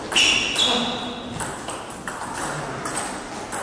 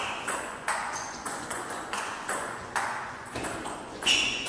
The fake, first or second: second